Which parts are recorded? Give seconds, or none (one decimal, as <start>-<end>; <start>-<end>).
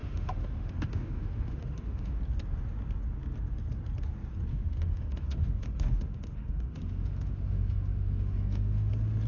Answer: 2.2-4.5; 8.9-9.3